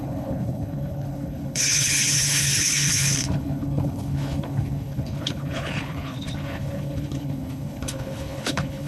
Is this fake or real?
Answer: fake